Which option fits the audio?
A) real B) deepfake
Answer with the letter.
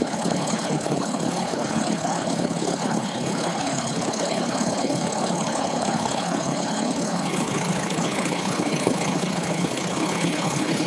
B